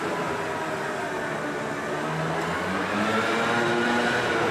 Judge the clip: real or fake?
real